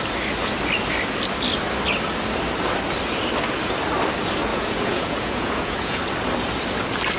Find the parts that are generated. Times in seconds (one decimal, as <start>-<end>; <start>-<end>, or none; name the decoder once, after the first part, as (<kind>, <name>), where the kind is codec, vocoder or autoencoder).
4.5-6.0 (vocoder, Vocos)